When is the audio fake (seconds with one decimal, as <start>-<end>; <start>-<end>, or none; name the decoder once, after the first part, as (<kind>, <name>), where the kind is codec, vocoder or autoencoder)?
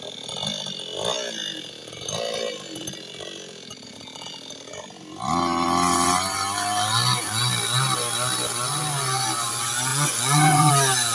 9.9-10.7 (vocoder, Vocos)